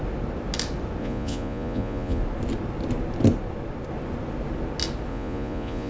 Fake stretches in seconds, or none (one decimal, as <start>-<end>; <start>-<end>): 1.0-2.2; 5.1-5.9